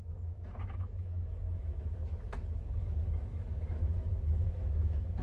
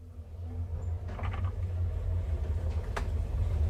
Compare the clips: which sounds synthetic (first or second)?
first